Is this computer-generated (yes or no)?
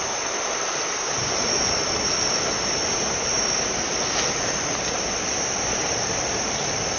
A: no